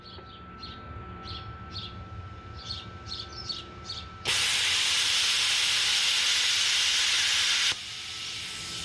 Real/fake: real